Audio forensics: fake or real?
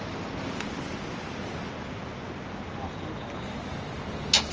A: real